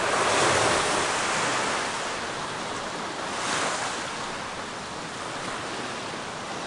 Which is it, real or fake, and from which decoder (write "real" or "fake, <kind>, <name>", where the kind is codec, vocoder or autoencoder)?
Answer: real